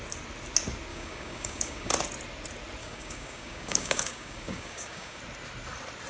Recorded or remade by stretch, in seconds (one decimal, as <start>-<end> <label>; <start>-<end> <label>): 0.0-0.9 recorded; 0.9-1.9 remade; 1.9-2.8 recorded; 2.8-5.2 remade; 5.2-6.1 recorded